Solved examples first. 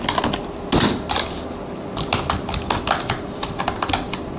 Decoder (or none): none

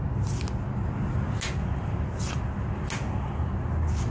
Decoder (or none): none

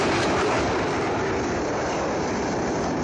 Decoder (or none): vocoder, BigVGAN v2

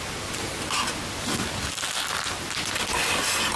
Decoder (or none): none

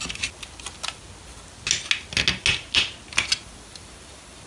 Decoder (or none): none